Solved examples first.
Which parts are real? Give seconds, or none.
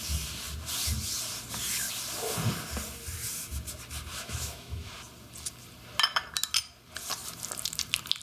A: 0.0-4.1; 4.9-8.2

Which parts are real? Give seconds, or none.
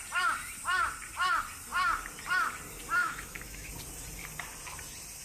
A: 0.0-3.0; 3.7-5.2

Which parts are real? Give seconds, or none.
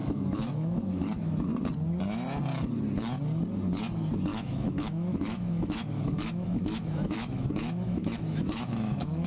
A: 1.5-4.3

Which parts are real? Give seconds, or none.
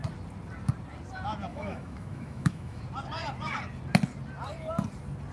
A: 0.0-1.5; 2.8-5.3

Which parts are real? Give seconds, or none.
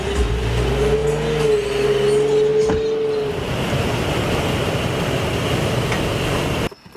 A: 0.0-7.0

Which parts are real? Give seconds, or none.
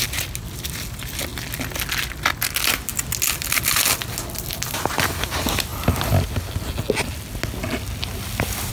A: 0.0-8.7